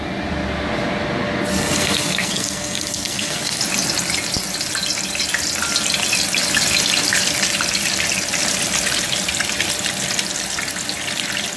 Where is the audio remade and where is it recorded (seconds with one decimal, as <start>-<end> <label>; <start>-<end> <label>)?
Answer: 0.0-1.5 recorded; 1.5-3.6 remade; 3.6-11.6 recorded